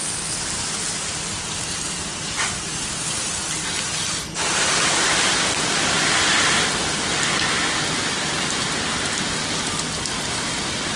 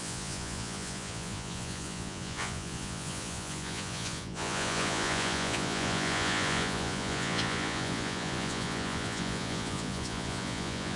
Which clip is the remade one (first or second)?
second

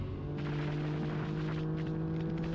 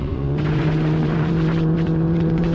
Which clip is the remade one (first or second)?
second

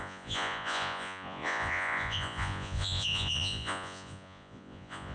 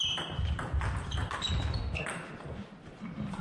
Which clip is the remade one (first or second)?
first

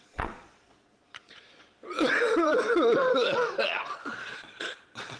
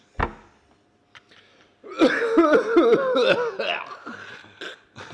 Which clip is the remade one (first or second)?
first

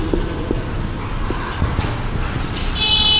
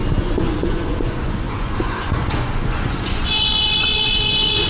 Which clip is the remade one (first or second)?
second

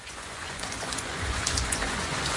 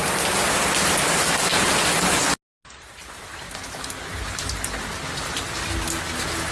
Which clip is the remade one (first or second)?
first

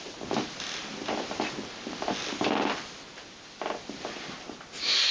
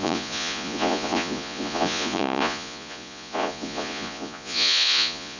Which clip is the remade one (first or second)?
second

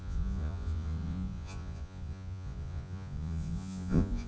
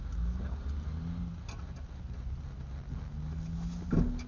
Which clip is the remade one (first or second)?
first